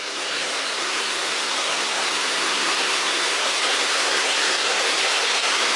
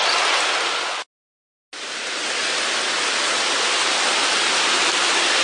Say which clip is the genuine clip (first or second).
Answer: second